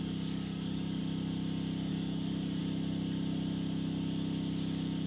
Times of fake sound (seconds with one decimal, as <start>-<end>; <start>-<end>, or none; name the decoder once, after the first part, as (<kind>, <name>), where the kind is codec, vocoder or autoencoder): 0.0-1.0 (codec, DAC); 1.9-2.6